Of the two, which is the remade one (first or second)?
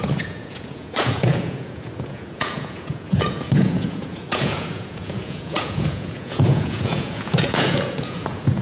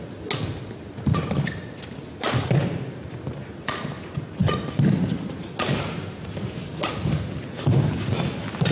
first